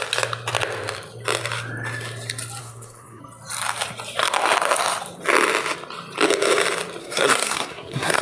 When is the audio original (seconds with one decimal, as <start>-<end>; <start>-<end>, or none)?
0.0-2.6; 3.2-7.0